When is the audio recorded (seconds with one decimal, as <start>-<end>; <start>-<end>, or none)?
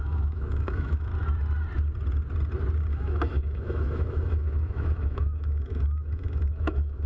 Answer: 1.1-2.9